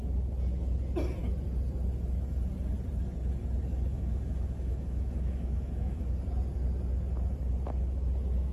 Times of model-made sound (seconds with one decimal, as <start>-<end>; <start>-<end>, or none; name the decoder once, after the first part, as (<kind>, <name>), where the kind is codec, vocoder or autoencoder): 3.9-6.2 (autoencoder, DAC-VAE)